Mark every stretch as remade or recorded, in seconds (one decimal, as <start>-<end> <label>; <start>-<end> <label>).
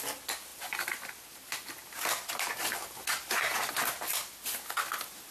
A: 0.0-0.5 recorded; 0.5-3.7 remade; 3.7-5.3 recorded